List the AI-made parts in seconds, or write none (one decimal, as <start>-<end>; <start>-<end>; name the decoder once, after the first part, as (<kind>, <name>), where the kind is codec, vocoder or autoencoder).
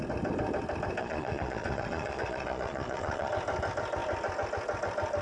1.0-3.3 (vocoder, Vocos)